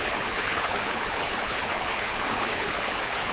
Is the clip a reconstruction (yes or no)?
yes